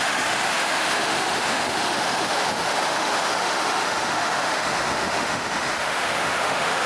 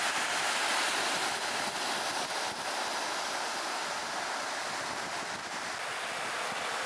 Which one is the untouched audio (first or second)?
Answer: second